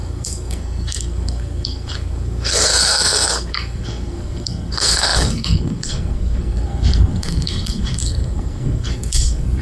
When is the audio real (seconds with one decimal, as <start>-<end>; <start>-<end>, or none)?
none